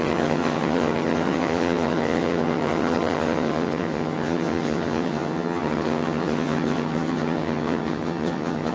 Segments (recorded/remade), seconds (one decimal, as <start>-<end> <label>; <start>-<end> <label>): 0.0-8.7 remade